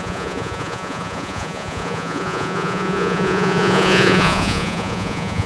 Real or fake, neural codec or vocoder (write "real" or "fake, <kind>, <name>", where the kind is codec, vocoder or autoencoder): fake, vocoder, Vocos